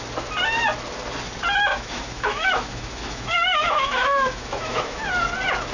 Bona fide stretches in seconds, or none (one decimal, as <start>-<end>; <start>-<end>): 0.0-1.7; 5.1-5.7